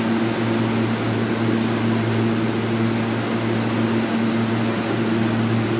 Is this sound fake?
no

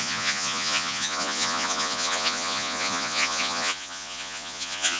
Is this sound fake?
yes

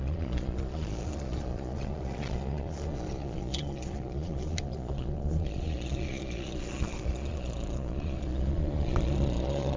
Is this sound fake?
yes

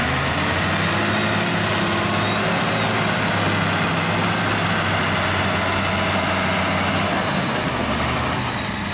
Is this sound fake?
no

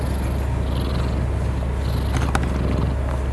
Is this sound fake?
no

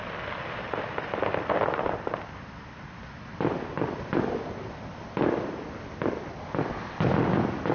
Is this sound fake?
no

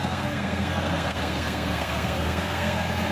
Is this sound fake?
yes